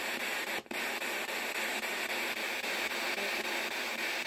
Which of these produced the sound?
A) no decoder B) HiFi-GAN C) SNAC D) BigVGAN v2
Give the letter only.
A